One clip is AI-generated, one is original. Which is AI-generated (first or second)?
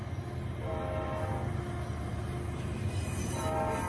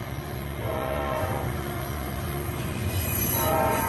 second